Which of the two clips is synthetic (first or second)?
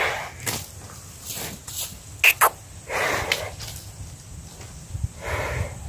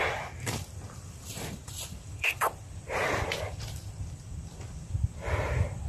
second